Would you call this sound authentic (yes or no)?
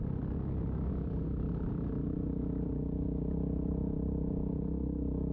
yes